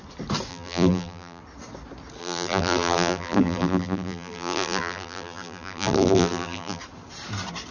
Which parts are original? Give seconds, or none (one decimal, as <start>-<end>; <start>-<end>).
0.0-0.5; 1.4-2.2; 6.8-7.7